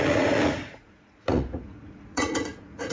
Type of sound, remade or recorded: remade